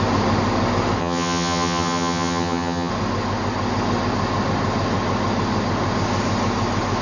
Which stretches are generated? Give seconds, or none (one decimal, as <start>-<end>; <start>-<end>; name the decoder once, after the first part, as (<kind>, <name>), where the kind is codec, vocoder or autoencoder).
1.0-2.9 (vocoder, HiFi-GAN)